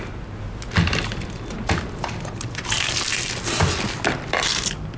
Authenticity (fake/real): fake